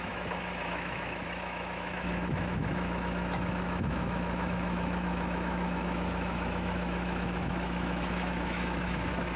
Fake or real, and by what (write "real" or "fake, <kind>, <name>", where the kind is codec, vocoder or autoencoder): fake, autoencoder, DAC-VAE